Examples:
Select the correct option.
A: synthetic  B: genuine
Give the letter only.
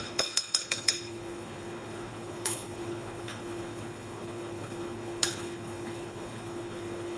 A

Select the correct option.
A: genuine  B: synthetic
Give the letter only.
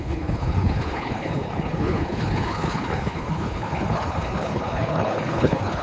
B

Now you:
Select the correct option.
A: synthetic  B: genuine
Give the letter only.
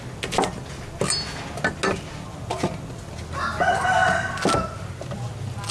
B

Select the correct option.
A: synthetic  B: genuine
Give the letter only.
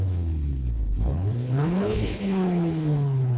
A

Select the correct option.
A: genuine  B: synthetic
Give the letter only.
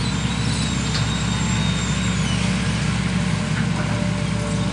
A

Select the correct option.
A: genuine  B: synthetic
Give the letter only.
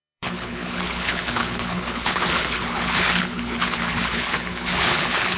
B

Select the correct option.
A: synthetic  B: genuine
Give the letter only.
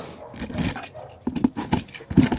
B